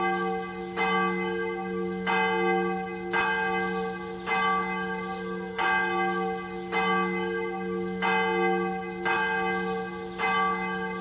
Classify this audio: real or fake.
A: real